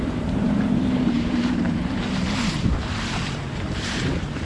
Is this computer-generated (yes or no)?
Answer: yes